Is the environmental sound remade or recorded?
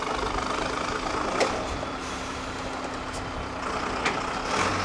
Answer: recorded